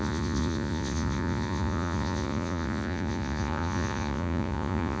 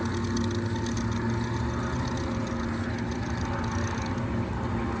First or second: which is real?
second